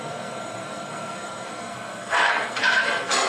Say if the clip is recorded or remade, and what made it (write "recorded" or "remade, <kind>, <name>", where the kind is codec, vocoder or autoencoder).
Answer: remade, codec, SNAC